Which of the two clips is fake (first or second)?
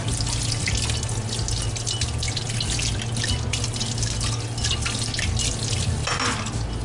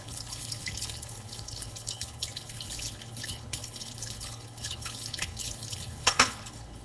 second